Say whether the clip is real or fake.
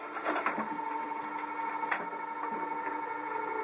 real